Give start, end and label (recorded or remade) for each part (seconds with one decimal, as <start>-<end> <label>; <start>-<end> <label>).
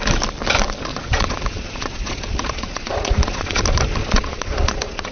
0.0-0.9 recorded; 0.9-3.6 remade; 3.6-4.0 recorded; 4.0-5.1 remade